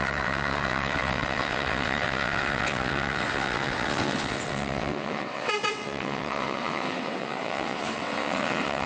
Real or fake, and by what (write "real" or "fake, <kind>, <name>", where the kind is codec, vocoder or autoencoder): fake, vocoder, WaveNeXt